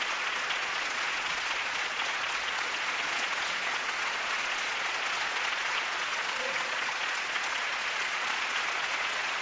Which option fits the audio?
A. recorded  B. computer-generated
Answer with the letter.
B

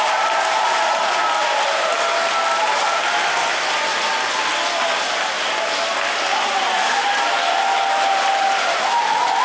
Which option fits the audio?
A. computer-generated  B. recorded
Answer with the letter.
B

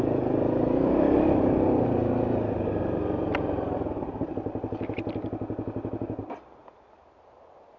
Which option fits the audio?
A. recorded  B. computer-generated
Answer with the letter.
A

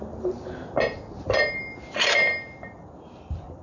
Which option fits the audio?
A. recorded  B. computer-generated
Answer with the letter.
A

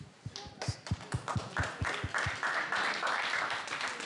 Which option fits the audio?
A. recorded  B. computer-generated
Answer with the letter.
A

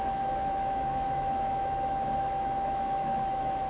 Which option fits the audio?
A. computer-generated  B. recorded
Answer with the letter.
A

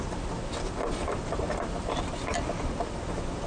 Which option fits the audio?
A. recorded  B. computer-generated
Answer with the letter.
A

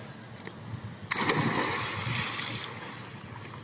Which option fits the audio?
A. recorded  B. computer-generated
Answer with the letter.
A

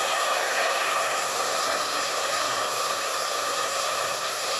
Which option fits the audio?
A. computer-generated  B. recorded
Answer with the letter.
A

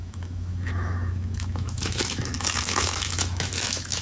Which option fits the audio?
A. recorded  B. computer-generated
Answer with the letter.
B